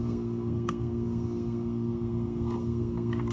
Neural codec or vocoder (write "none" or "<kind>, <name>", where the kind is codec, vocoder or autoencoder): codec, SNAC